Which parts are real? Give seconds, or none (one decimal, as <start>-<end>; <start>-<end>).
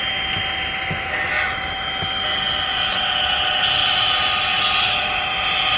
0.0-5.8